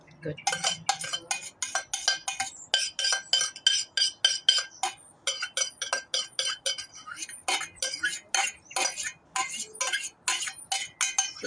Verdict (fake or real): real